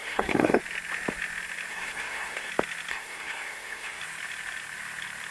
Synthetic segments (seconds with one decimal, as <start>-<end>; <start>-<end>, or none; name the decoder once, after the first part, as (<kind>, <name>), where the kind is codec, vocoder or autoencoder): 0.0-0.6 (codec, SNAC); 1.7-2.5; 2.9-4.0